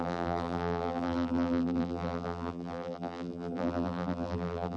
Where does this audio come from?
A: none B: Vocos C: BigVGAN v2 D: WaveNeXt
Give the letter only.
C